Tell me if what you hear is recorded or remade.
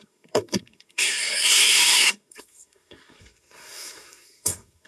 remade